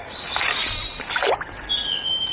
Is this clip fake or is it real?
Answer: real